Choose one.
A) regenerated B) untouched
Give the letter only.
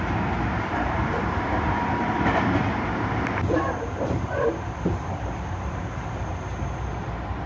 A